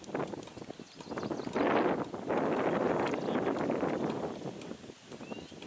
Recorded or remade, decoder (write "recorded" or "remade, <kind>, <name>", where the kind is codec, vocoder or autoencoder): recorded